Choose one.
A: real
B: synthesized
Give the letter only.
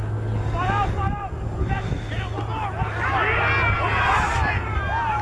A